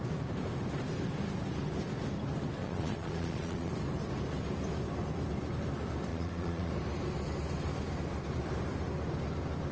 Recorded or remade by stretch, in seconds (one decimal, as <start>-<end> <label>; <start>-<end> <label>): 0.0-2.6 recorded; 2.6-3.7 remade; 3.7-6.1 recorded; 6.1-6.7 remade; 6.7-9.7 recorded

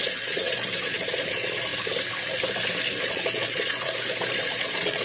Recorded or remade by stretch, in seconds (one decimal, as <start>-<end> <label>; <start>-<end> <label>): 0.0-1.7 remade; 1.7-3.0 recorded; 3.0-5.0 remade

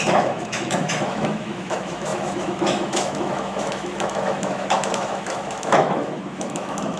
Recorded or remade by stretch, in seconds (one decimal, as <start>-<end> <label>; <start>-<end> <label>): 0.0-7.0 remade

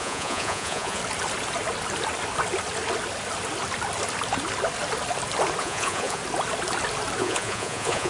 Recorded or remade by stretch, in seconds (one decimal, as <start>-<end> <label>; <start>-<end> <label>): 0.0-1.0 remade; 1.0-5.6 recorded; 5.6-6.2 remade; 6.2-7.2 recorded; 7.2-8.1 remade

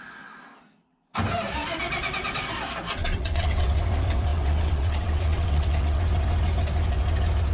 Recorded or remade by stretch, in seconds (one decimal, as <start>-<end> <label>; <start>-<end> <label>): 0.0-3.0 recorded; 3.0-3.8 remade; 3.8-4.3 recorded; 4.3-6.0 remade; 6.0-7.5 recorded